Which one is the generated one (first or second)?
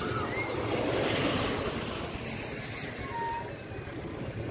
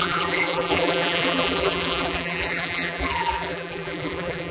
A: second